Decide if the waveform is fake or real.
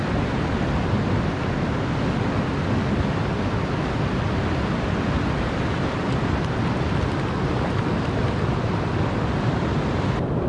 real